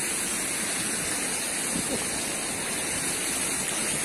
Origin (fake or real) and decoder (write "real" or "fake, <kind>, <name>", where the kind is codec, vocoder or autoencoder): real